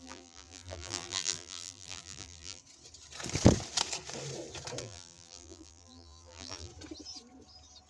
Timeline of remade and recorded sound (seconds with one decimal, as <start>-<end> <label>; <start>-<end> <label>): 0.0-2.6 remade; 2.6-4.8 recorded; 4.8-6.7 remade; 6.7-7.9 recorded